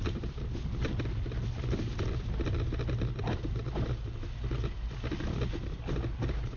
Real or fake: real